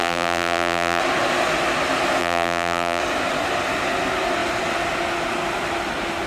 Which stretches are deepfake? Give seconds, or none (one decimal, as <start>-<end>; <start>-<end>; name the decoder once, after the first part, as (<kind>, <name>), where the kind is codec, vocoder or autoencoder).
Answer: 0.0-1.0 (vocoder, BigVGAN v2); 2.2-3.0